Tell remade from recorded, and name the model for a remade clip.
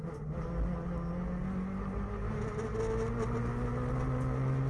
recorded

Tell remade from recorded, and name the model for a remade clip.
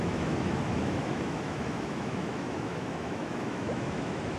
remade, autoencoder, DAC-VAE